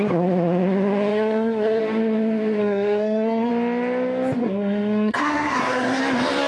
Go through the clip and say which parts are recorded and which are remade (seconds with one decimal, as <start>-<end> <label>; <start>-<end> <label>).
0.0-1.1 recorded; 1.1-1.8 remade; 1.8-2.6 recorded; 2.6-3.5 remade; 3.5-4.4 recorded; 4.4-6.0 remade; 6.0-6.5 recorded